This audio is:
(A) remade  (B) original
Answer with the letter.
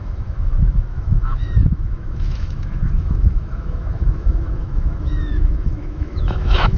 A